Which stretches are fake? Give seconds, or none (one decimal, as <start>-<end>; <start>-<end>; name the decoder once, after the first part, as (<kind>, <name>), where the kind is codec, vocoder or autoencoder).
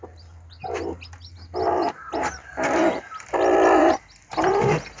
none